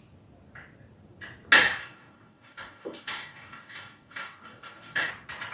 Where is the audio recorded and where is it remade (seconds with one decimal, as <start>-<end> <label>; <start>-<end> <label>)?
0.0-1.8 recorded; 1.8-5.1 remade; 5.1-5.5 recorded

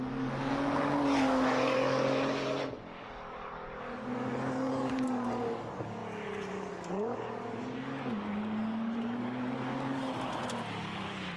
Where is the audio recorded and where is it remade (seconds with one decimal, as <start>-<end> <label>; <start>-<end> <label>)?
0.0-10.0 remade; 10.0-10.8 recorded; 10.8-11.4 remade

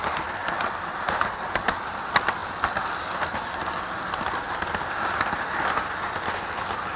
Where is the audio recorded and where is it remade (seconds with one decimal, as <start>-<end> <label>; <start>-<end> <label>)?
0.0-7.0 recorded

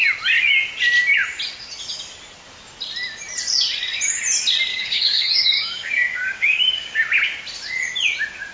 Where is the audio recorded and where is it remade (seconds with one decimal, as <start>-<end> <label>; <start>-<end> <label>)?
0.0-4.7 recorded; 4.7-7.0 remade; 7.0-8.5 recorded

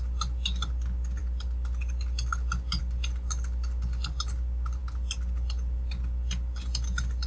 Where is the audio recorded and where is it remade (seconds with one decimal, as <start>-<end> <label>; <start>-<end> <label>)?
0.0-7.3 recorded